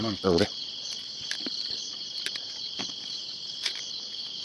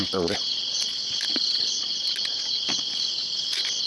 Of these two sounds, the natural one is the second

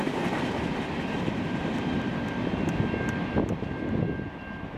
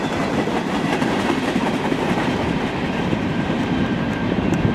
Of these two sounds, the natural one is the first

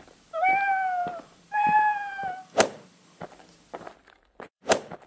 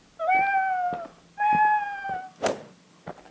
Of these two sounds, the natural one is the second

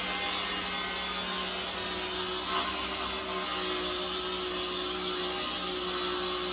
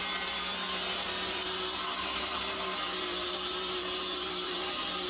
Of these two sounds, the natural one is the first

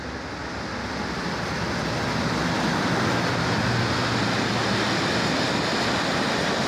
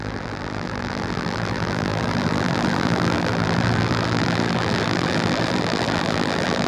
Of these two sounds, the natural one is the first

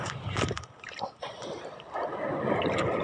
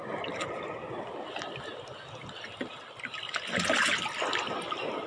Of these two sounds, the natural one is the second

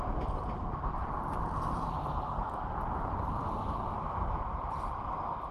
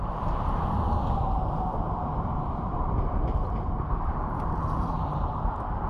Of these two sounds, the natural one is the first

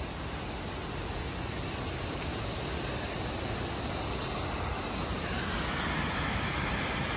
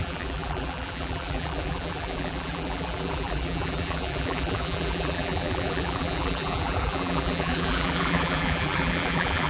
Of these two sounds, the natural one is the first